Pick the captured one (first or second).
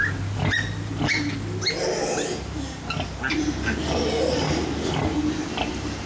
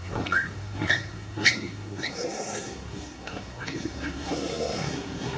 first